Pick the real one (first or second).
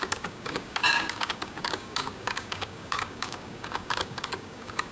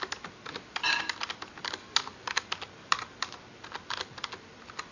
second